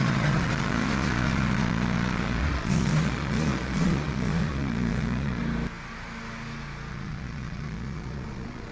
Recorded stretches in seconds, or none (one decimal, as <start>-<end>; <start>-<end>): 5.4-6.9